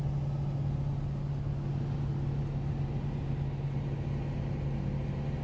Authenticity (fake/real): real